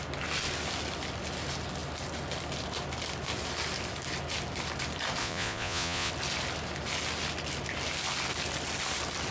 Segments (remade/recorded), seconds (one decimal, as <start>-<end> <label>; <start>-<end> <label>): 0.0-5.2 recorded; 5.2-6.1 remade; 6.1-9.3 recorded